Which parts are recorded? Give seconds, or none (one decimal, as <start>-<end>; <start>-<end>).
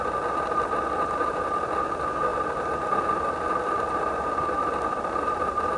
0.0-5.8